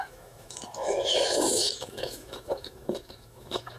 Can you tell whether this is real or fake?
fake